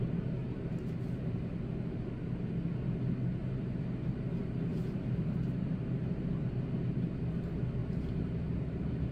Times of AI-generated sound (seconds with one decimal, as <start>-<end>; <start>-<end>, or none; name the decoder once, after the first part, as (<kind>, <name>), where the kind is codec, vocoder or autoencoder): 0.4-1.5 (vocoder, BigVGAN v2); 3.4-4.1; 4.7-6.3; 7.8-8.4